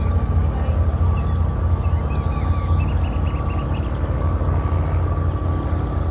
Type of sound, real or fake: real